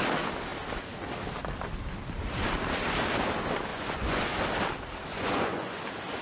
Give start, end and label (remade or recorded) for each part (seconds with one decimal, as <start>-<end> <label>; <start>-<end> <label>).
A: 0.0-3.7 recorded; 3.7-4.2 remade; 4.2-5.1 recorded; 5.1-5.8 remade; 5.8-6.2 recorded